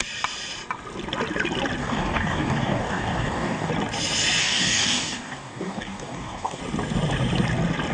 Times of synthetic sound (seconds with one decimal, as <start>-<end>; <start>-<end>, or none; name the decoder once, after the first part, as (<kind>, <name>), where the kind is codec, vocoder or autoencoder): 1.8-3.7 (codec, DAC); 4.4-6.6